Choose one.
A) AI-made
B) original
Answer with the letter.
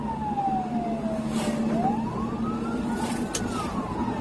B